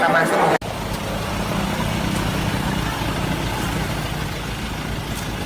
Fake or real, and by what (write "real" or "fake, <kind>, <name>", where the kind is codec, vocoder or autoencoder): real